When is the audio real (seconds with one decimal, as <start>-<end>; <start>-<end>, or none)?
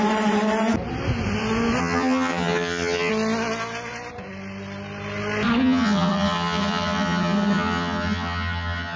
0.0-1.8; 3.1-5.6